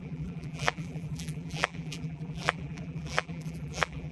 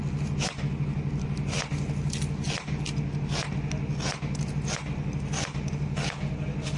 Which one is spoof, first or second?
first